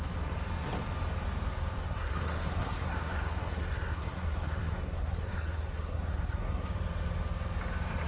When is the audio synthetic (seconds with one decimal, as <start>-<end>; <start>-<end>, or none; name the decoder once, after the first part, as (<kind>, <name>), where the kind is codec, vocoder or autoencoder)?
1.8-6.7 (codec, SNAC)